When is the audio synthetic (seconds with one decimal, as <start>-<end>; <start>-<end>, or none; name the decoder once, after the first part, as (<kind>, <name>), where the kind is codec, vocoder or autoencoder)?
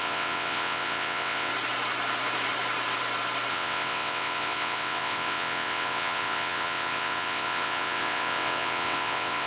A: 0.0-1.5 (vocoder, WaveNeXt); 3.5-9.5